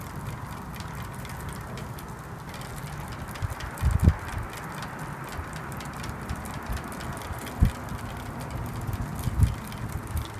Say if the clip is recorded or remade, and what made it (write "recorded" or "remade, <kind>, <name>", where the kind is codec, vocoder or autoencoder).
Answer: recorded